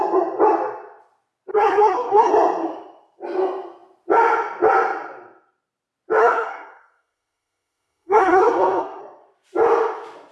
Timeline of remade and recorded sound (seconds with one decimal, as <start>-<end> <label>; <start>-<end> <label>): 0.0-1.5 recorded; 1.5-2.3 remade; 2.3-6.2 recorded; 6.2-9.0 remade; 9.0-10.3 recorded